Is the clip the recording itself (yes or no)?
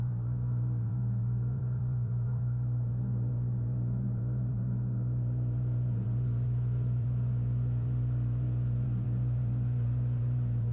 no